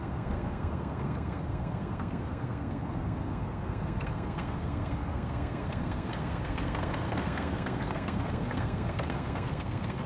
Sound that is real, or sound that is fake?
fake